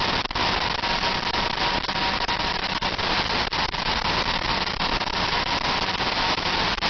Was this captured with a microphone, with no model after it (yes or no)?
yes